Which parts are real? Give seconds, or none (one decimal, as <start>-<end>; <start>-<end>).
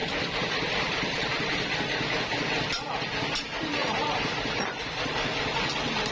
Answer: 1.3-3.8; 5.0-6.1